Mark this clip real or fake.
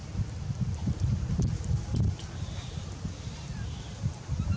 fake